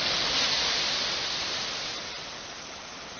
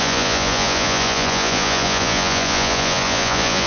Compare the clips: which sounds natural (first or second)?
first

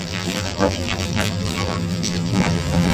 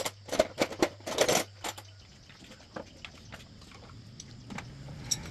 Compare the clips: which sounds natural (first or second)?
second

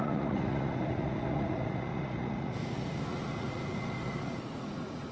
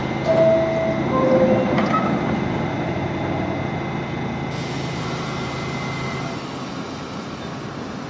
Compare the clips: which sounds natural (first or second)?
second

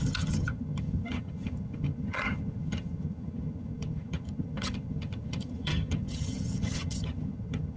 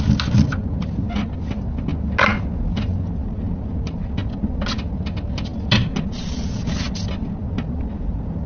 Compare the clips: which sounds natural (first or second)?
second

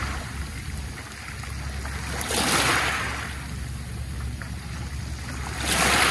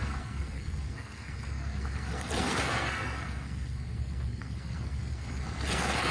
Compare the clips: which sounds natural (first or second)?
first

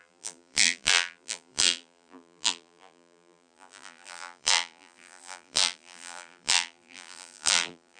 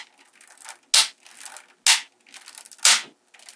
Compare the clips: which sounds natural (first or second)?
second